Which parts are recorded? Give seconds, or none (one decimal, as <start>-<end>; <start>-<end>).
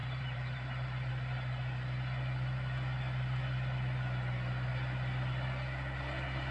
1.1-6.5